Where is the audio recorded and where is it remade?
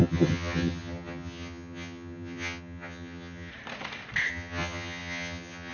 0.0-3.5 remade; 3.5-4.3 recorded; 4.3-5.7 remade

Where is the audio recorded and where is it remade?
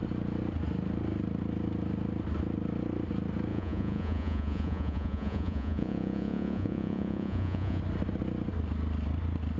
0.0-3.5 recorded; 3.5-7.8 remade; 7.8-9.6 recorded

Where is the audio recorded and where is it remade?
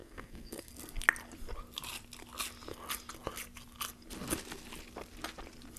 0.0-0.7 remade; 0.7-5.8 recorded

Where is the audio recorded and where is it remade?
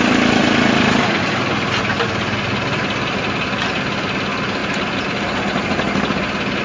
0.0-6.6 recorded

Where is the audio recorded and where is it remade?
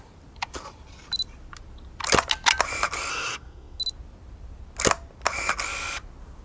0.0-3.1 recorded; 3.1-3.8 remade; 3.8-6.4 recorded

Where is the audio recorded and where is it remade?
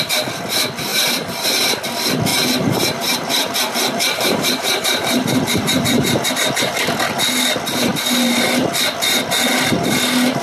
0.0-0.9 recorded; 0.9-1.5 remade; 1.5-2.3 recorded; 2.3-6.3 remade; 6.3-10.4 recorded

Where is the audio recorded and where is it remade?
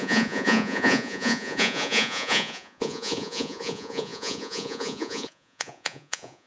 0.0-6.5 remade